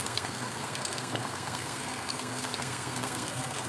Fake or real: fake